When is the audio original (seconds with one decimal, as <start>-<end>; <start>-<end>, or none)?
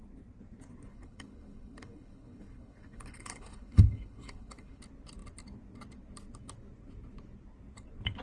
0.0-0.9; 4.8-8.2